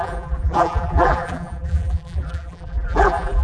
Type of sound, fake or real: fake